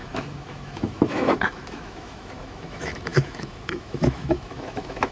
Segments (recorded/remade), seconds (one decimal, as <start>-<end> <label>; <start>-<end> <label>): 0.0-5.1 remade